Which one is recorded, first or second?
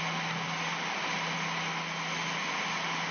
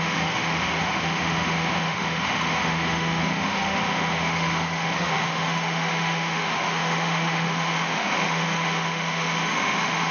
first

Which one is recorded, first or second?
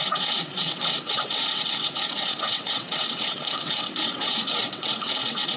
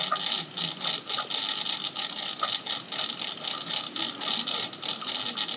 second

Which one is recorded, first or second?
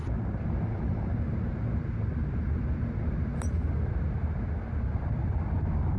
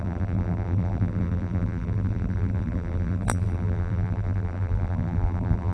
first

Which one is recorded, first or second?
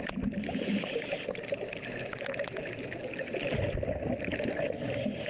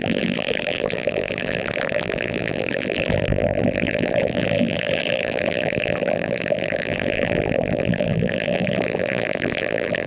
first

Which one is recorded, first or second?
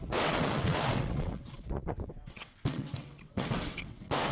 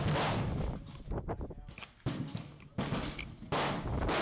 second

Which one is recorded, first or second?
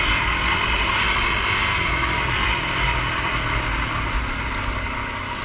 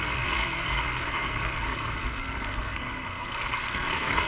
first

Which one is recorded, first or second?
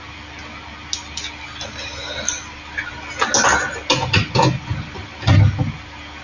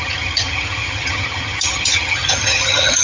first